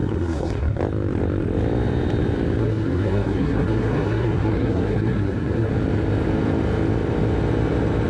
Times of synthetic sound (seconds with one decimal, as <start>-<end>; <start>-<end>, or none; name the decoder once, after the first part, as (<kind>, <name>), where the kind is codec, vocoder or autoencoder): 0.0-0.8 (codec, SNAC); 2.6-5.7